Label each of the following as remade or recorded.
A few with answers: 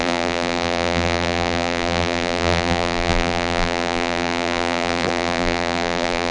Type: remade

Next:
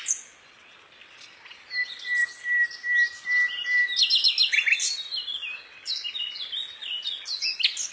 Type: recorded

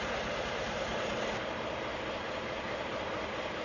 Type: remade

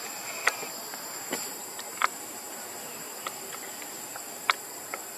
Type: recorded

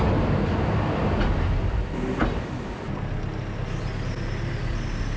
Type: recorded